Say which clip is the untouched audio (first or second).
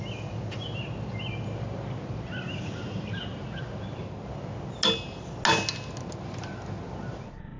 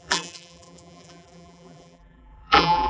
first